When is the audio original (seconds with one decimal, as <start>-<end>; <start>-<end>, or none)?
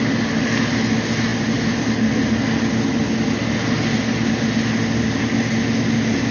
0.0-6.3